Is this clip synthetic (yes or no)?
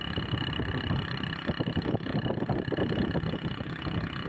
no